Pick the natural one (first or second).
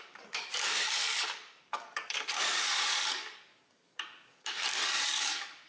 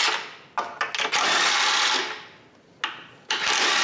second